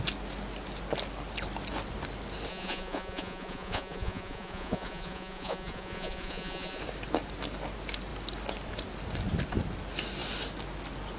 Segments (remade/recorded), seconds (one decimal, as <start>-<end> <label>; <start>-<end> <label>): 0.0-2.5 recorded; 2.5-6.8 remade; 6.8-11.2 recorded